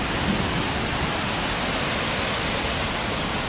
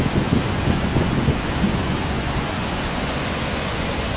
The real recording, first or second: first